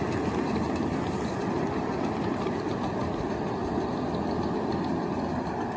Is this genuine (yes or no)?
yes